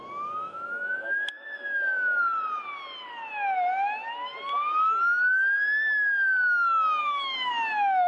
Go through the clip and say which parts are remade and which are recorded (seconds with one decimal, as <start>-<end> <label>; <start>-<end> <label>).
0.0-0.4 recorded; 0.4-2.2 remade; 2.2-7.0 recorded; 7.0-7.5 remade; 7.5-8.1 recorded